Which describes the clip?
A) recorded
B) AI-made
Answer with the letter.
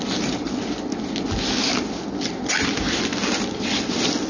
A